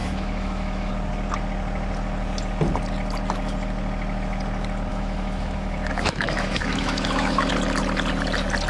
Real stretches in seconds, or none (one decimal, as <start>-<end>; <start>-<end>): 0.9-4.9; 7.5-8.7